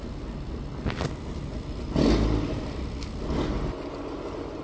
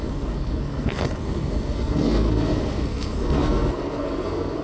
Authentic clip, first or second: first